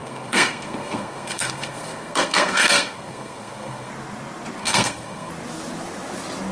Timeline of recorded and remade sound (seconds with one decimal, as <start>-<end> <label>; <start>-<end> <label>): 0.0-3.9 remade; 3.9-4.6 recorded; 4.6-5.3 remade; 5.3-6.5 recorded